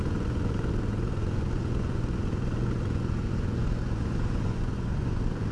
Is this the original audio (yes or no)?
no